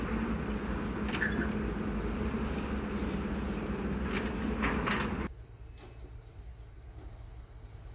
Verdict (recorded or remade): recorded